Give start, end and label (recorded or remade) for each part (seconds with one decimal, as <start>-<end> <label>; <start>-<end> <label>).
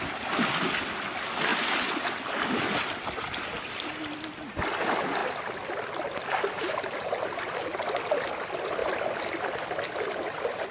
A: 0.0-1.5 recorded; 1.5-4.4 remade; 4.4-10.7 recorded